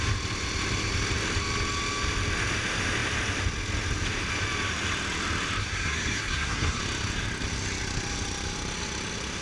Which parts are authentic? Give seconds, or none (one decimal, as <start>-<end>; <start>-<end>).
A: 0.0-5.6; 6.8-9.4